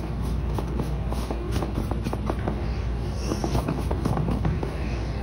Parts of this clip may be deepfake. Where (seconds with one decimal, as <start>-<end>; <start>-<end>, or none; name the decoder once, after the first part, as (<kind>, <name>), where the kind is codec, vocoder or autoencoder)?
0.0-1.8 (codec, DAC); 2.4-5.2